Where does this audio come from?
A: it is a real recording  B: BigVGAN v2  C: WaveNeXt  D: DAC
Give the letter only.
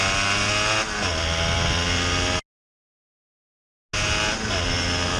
A